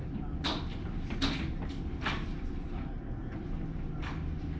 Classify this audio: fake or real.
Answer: real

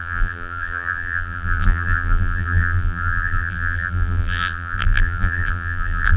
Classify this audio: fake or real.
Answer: fake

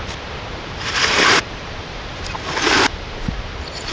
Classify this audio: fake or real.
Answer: fake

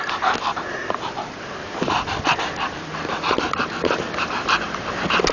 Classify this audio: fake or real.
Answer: fake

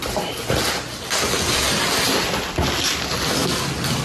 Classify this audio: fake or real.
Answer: real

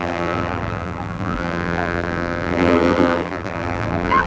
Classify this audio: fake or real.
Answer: fake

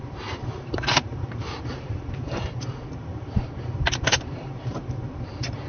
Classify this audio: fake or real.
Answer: fake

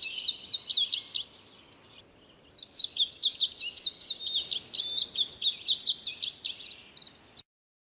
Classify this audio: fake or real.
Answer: real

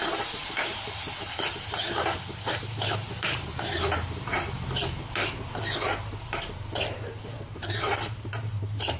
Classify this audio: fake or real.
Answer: fake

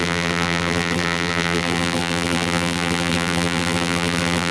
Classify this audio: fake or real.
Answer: fake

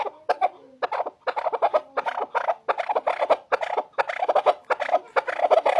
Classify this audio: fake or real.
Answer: real